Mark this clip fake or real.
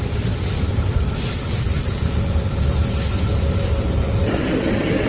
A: real